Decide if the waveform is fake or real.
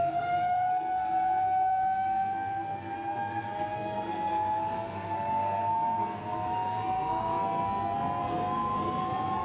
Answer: fake